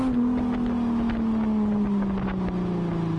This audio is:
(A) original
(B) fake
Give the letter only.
A